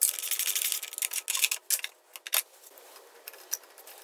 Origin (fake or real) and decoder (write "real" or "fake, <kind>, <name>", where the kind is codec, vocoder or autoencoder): real